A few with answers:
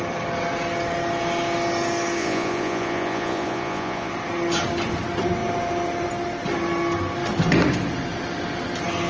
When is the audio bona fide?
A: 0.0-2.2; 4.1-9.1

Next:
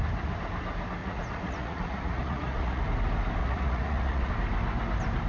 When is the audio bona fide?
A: 0.0-1.0; 2.8-3.4; 4.3-5.3

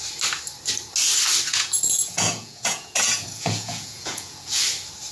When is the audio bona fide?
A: 0.0-1.5; 4.6-5.1

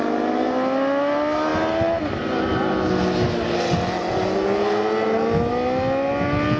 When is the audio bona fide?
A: 0.0-6.6

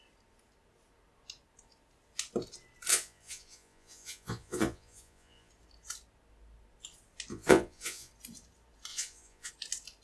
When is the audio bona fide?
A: 0.0-2.9; 5.5-7.3; 8.1-8.9; 9.5-10.0